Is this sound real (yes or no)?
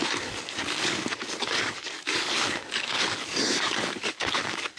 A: no